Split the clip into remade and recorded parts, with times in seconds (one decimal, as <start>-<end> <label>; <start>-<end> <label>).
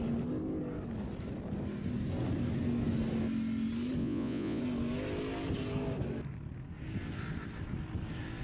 0.0-4.0 recorded; 4.0-4.6 remade; 4.6-8.4 recorded